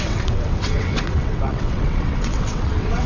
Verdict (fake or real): fake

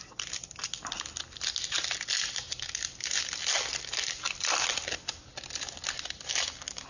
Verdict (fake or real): real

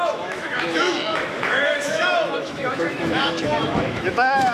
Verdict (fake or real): fake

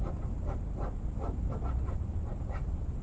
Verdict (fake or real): real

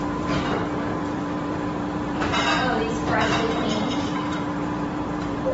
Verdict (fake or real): fake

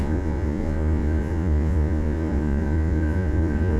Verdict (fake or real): fake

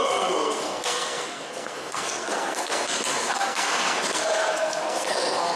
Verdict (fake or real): fake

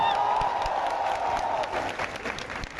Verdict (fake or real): real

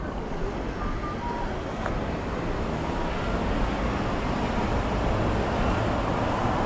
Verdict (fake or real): real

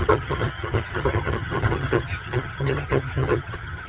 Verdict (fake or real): fake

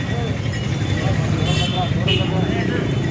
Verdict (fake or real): real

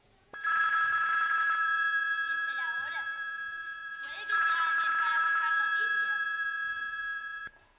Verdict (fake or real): fake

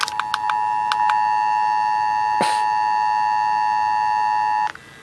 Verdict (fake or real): real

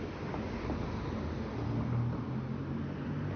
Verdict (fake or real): real